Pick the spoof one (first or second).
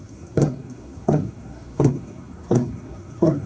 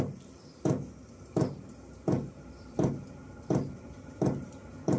first